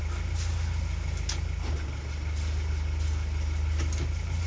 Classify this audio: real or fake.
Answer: real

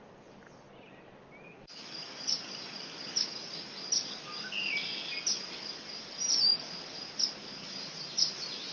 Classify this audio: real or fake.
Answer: real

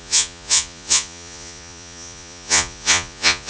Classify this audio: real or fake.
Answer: fake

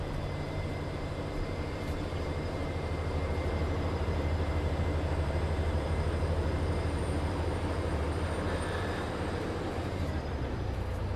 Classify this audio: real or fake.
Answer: fake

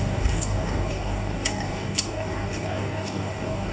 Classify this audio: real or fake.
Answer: fake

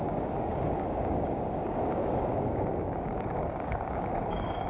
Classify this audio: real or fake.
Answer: fake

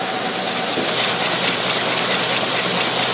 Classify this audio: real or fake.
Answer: real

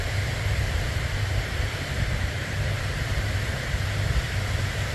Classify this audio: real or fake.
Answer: fake